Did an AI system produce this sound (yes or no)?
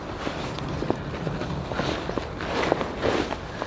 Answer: no